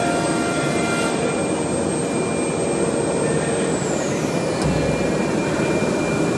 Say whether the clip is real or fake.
real